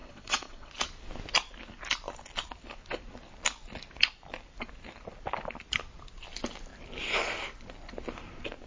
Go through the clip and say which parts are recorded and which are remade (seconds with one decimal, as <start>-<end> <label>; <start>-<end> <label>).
0.0-0.7 remade; 0.7-8.7 recorded